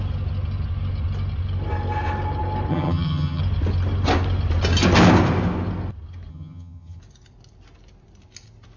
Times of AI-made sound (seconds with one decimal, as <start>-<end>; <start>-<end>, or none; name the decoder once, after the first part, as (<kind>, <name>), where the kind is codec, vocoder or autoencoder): 2.7-3.4 (vocoder, HiFi-GAN); 6.3-7.0